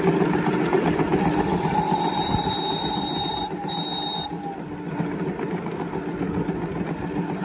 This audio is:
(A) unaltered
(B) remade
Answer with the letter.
A